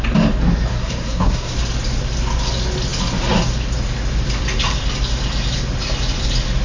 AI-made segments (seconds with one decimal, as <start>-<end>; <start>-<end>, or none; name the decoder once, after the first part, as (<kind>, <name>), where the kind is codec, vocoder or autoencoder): 0.7-1.5 (codec, SNAC)